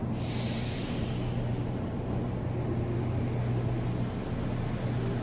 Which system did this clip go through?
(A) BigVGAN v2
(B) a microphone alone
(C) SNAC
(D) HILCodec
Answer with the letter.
B